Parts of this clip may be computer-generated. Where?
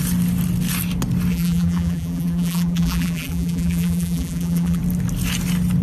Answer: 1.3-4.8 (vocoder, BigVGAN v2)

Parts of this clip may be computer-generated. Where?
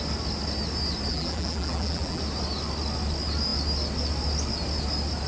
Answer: 1.1-2.2 (vocoder, BigVGAN v2)